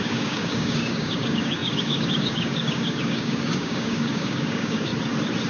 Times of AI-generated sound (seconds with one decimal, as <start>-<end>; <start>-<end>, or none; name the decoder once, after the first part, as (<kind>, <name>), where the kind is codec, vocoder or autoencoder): 0.0-4.9 (codec, DAC)